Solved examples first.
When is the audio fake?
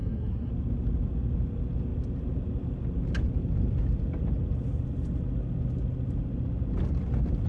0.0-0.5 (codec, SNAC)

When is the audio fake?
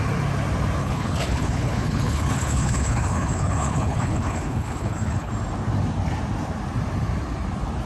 0.8-5.3 (codec, HILCodec)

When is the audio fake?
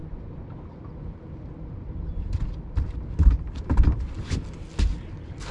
none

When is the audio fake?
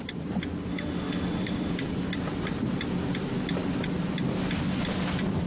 0.7-1.7 (autoencoder, DAC-VAE)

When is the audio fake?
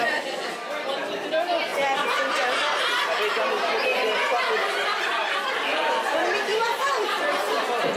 6.5-7.6 (vocoder, BigVGAN v2)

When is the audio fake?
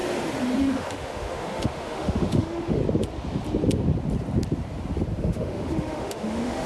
0.6-2.8 (autoencoder, DAC-VAE); 5.2-6.7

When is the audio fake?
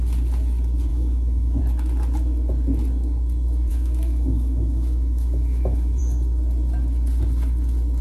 0.9-1.6 (autoencoder, DAC-VAE); 3.7-6.0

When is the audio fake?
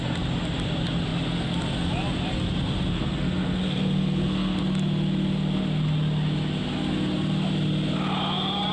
2.9-4.6 (codec, SNAC)